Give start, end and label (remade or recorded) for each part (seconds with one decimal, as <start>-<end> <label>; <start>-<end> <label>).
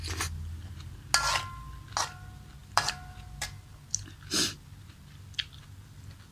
0.0-2.6 recorded; 2.6-4.3 remade; 4.3-6.3 recorded